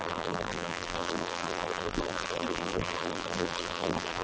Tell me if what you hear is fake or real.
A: fake